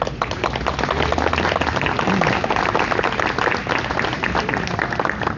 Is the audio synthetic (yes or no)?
no